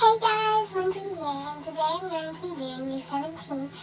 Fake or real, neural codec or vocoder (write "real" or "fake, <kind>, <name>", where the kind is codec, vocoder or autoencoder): fake, codec, DAC